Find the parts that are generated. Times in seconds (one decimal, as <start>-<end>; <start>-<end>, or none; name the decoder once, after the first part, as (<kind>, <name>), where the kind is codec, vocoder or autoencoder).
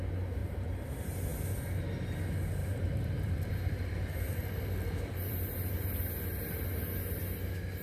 0.4-0.9 (vocoder, BigVGAN v2); 2.6-6.1